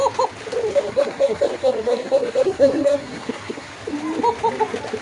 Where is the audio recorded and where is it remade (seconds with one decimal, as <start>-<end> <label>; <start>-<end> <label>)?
0.0-0.7 recorded; 0.7-3.7 remade; 3.7-5.0 recorded